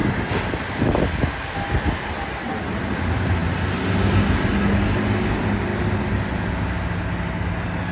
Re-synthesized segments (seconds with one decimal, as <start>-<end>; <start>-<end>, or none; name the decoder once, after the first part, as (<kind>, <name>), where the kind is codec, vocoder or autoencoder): none